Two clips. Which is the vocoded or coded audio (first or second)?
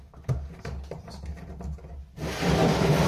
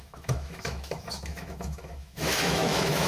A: second